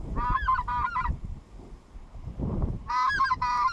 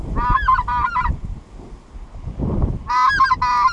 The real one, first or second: second